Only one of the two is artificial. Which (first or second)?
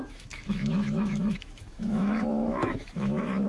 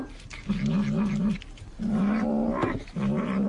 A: first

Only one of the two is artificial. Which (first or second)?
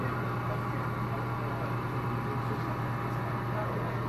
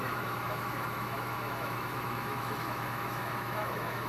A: second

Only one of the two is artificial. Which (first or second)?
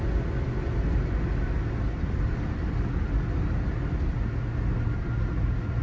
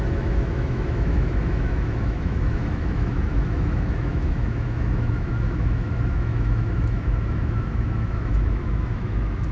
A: second